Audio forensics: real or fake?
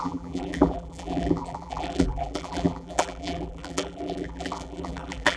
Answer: fake